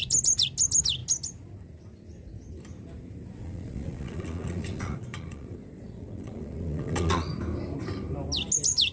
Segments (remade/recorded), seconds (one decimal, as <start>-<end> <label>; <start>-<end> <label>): 0.0-3.4 recorded; 3.4-7.3 remade; 7.3-8.9 recorded